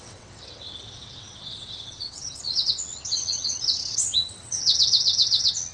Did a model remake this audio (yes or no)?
yes